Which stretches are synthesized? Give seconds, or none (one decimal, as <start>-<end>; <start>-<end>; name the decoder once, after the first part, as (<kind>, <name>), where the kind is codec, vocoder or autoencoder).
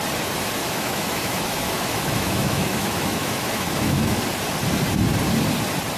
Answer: 0.6-4.2 (autoencoder, DAC-VAE)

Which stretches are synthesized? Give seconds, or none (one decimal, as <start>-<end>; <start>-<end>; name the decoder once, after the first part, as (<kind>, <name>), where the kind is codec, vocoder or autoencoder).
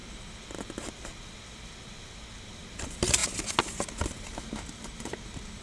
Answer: none